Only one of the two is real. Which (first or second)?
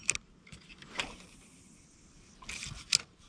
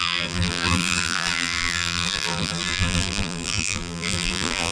first